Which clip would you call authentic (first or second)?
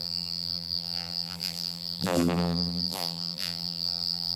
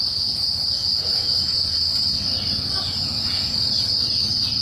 second